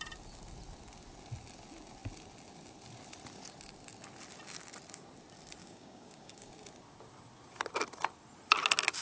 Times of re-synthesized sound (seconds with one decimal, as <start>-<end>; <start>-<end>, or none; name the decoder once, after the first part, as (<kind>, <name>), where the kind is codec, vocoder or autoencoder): 5.6-6.5 (codec, DAC)